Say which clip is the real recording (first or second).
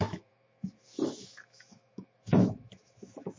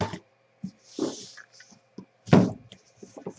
second